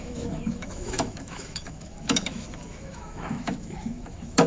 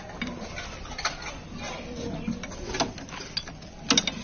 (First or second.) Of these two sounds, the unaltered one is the second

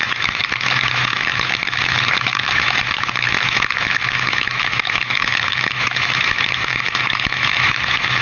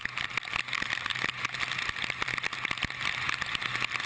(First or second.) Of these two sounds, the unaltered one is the second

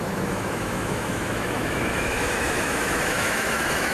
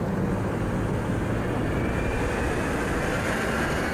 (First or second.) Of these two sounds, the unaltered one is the second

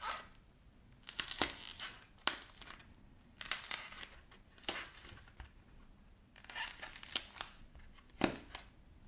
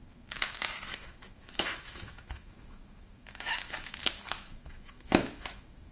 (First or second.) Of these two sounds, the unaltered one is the first